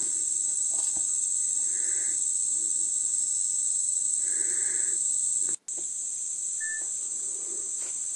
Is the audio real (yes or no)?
yes